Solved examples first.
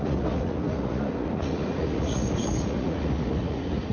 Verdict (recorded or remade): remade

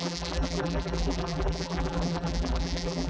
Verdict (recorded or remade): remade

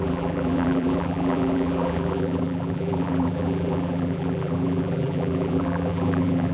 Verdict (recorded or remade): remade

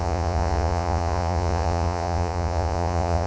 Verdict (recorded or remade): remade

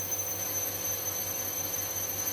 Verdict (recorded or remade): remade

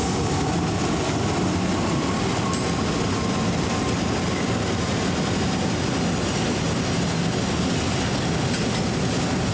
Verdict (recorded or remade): recorded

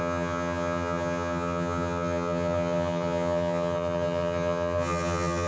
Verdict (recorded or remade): remade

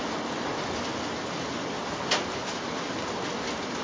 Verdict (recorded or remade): recorded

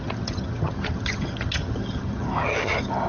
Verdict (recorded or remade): remade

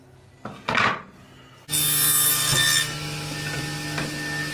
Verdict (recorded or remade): recorded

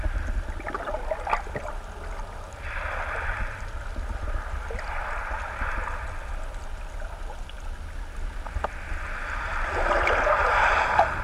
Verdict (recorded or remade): recorded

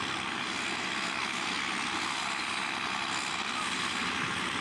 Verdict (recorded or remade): recorded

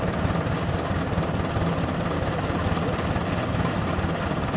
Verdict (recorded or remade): recorded